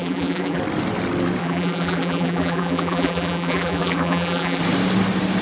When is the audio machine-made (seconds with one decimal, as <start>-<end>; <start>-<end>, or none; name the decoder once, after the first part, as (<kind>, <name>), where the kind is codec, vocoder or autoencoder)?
0.0-0.6 (vocoder, BigVGAN v2); 1.4-4.6